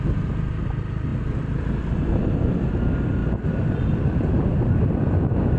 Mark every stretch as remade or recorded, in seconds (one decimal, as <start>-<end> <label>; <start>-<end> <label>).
0.0-5.6 recorded